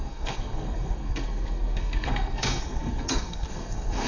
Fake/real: fake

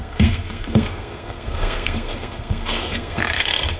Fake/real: fake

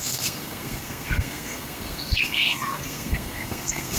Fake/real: fake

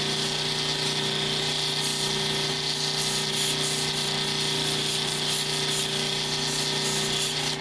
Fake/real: real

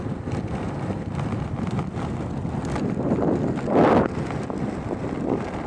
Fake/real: real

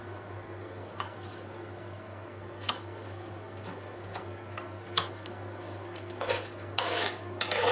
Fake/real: fake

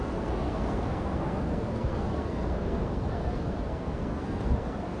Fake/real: fake